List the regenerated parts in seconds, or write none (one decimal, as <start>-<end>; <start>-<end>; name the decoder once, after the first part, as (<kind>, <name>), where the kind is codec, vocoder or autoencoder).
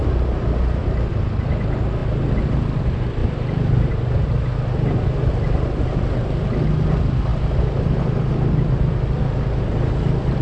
none